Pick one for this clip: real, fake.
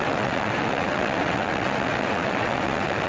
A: fake